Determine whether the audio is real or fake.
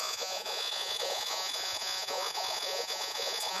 fake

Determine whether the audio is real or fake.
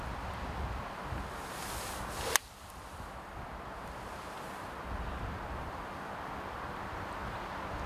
real